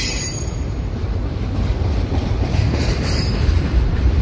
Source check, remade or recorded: remade